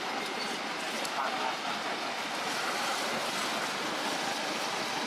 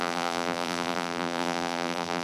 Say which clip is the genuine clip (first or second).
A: first